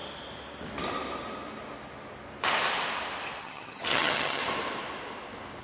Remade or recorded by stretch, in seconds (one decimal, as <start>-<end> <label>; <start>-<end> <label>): 0.0-3.4 recorded; 3.4-4.4 remade; 4.4-5.6 recorded